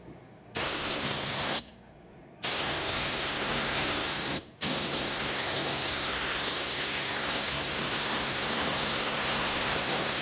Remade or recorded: remade